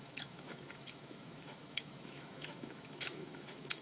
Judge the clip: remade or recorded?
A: remade